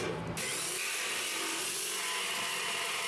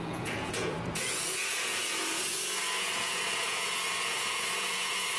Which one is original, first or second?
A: first